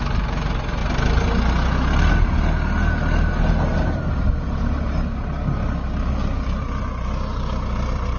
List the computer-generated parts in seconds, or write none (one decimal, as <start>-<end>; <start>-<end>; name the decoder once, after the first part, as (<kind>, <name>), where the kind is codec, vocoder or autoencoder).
none